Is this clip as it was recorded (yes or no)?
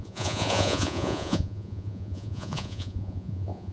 no